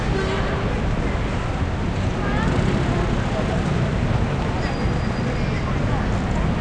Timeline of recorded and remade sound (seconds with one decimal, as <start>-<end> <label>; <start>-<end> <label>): 0.0-6.6 recorded